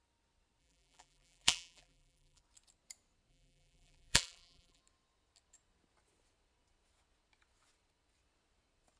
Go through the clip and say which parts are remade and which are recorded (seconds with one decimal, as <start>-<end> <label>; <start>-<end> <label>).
0.0-0.6 recorded; 0.6-2.4 remade; 2.4-3.3 recorded; 3.3-4.8 remade; 4.8-9.0 recorded